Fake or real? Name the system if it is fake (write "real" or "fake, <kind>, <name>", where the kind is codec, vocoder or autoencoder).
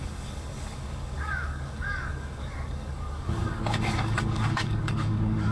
fake, codec, DAC